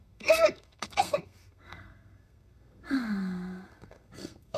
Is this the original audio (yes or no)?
no